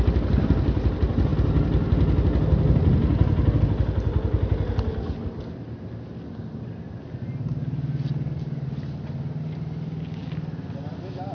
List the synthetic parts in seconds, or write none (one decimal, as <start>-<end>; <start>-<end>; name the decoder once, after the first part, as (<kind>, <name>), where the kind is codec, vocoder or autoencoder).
none